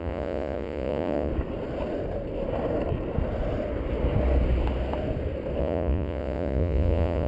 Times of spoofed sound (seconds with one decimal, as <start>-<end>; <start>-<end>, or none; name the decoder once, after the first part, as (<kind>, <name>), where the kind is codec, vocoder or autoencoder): 0.0-1.3 (vocoder, Vocos); 5.6-7.3